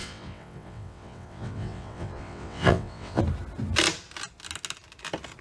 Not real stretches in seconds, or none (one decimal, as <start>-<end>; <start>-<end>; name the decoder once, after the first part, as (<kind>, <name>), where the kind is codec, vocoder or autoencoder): 0.0-3.2 (vocoder, WaveNeXt)